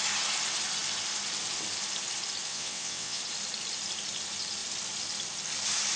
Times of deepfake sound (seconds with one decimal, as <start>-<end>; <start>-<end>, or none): 2.5-3.2